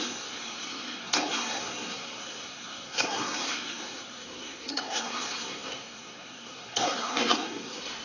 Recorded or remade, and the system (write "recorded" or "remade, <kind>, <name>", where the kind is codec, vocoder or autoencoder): remade, codec, SNAC